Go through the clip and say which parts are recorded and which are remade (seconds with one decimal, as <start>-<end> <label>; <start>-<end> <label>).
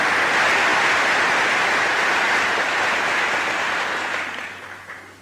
0.0-5.2 recorded